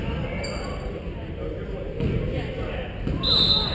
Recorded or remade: recorded